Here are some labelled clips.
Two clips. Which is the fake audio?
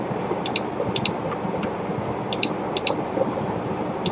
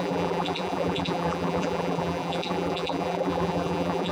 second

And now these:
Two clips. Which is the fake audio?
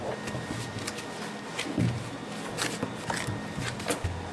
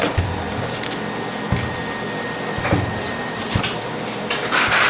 second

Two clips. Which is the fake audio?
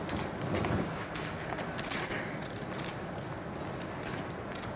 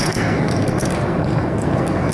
second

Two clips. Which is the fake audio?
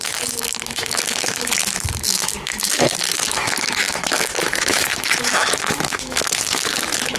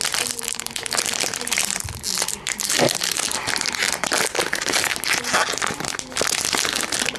first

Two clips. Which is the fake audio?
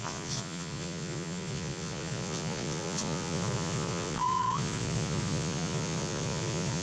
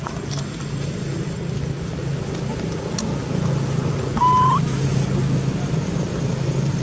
first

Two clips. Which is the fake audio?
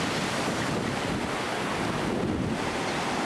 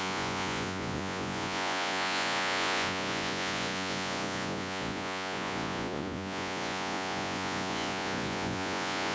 second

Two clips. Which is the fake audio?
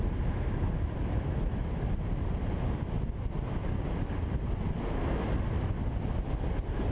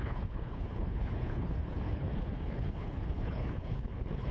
second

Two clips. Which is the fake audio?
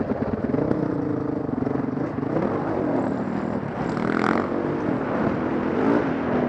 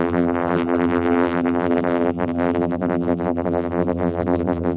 second